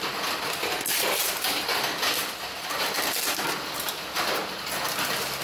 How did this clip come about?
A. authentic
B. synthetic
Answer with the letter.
A